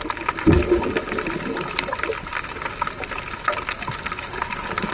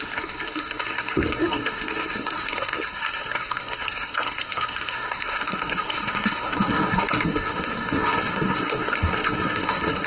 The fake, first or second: second